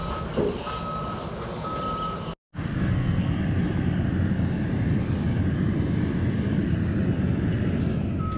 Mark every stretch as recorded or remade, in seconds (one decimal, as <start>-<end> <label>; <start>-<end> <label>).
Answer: 0.0-2.8 recorded; 2.8-3.3 remade; 3.3-8.4 recorded